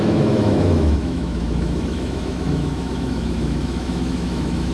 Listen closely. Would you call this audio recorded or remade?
remade